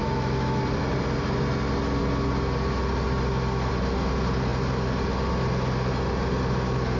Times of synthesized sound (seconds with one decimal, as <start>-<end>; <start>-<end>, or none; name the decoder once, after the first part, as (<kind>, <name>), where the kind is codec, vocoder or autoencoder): 0.0-0.6 (autoencoder, DAC-VAE)